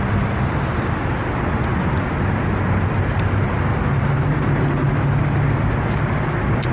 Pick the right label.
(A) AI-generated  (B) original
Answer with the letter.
B